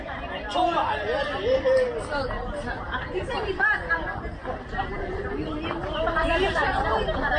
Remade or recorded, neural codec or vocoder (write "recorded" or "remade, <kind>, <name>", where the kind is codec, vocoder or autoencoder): remade, vocoder, BigVGAN v2